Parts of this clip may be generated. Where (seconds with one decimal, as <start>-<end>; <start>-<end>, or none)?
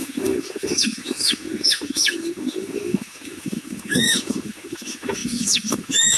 0.0-6.2